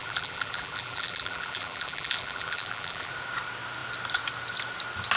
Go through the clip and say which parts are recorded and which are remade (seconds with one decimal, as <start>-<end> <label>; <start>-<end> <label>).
0.0-3.1 remade; 3.1-5.2 recorded